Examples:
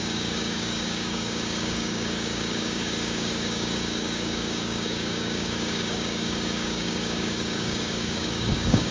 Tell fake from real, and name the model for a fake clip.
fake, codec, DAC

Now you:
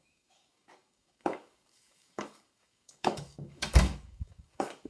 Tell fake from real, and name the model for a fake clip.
fake, codec, DAC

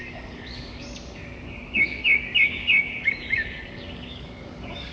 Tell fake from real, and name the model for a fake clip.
fake, codec, DAC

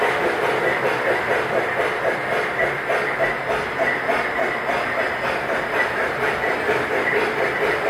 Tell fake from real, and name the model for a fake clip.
real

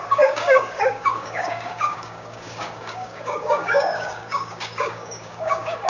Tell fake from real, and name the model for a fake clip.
fake, codec, DAC